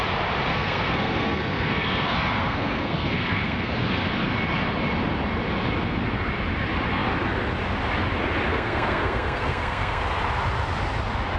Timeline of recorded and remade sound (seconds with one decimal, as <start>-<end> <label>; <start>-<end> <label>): 0.0-0.5 recorded; 0.5-4.1 remade; 4.1-8.5 recorded; 8.5-10.0 remade; 10.0-11.4 recorded